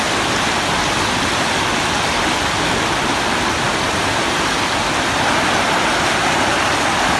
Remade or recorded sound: recorded